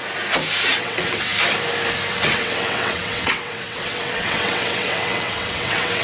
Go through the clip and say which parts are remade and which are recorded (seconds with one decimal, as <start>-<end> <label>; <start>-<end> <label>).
0.0-0.7 recorded; 0.7-1.3 remade; 1.3-2.1 recorded; 2.1-6.0 remade